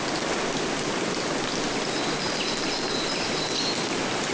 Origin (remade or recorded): recorded